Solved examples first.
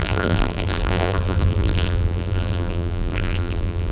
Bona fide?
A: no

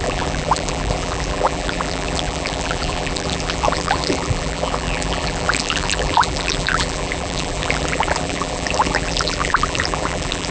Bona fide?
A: no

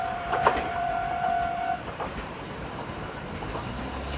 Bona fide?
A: no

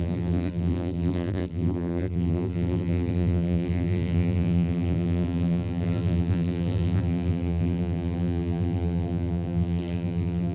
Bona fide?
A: no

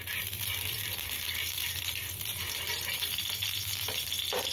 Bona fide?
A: no